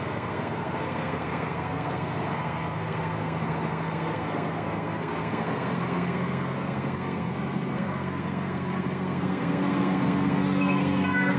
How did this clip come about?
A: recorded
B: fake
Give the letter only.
B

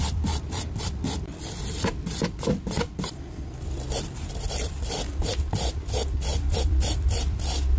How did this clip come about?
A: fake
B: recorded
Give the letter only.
A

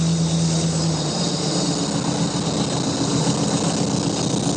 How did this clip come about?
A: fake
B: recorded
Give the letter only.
B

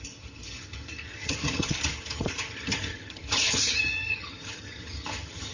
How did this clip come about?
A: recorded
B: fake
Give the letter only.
B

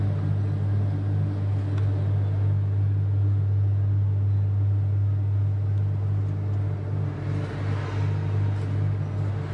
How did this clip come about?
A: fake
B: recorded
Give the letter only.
B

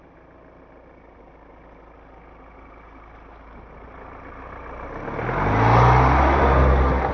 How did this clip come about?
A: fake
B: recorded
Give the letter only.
B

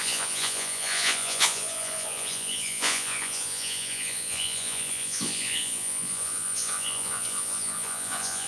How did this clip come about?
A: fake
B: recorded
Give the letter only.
A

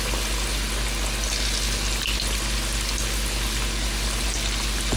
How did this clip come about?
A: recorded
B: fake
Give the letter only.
A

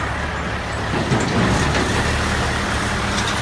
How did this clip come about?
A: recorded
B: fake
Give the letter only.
A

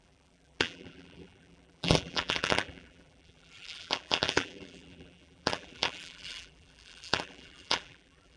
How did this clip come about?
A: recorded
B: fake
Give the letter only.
B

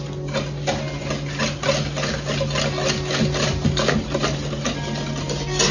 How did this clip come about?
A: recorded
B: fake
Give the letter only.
A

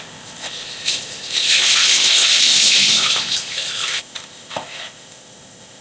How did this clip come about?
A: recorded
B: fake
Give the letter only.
B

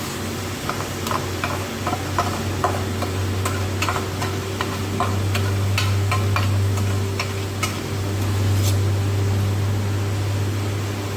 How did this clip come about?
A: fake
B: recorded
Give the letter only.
B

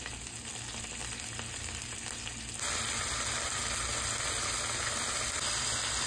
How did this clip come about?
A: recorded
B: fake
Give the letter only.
A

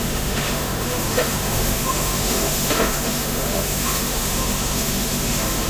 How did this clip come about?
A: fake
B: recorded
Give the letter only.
A